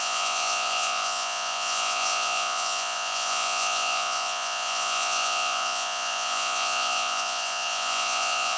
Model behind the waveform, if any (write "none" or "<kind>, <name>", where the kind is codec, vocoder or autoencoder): vocoder, Vocos